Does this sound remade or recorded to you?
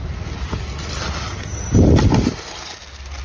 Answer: recorded